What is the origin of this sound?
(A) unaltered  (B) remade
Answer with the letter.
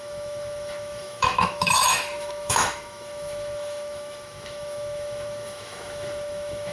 B